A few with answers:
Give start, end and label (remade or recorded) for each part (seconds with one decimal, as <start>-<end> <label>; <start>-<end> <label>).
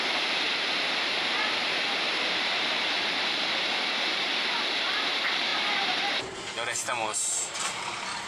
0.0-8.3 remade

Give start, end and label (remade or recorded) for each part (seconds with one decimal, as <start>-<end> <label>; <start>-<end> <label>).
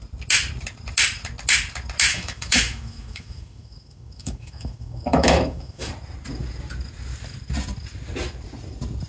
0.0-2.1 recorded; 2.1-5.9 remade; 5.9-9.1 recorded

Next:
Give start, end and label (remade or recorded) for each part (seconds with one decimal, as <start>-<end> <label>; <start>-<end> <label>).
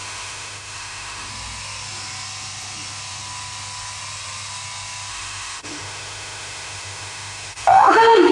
0.0-1.3 remade; 1.3-5.1 recorded; 5.1-8.3 remade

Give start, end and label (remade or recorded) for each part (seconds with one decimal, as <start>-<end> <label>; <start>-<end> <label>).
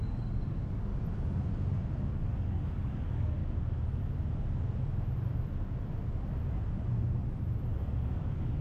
0.0-0.9 remade; 0.9-2.1 recorded; 2.1-3.4 remade; 3.4-7.7 recorded; 7.7-8.6 remade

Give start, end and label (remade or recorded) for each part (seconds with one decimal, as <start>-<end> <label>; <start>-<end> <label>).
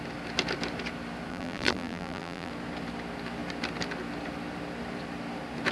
0.0-1.3 recorded; 1.3-2.5 remade; 2.5-5.7 recorded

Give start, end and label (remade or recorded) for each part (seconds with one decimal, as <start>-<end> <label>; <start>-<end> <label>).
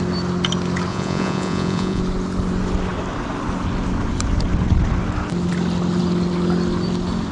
0.0-0.9 recorded; 0.9-2.0 remade; 2.0-7.3 recorded